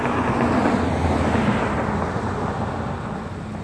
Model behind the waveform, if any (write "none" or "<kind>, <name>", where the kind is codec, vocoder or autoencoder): none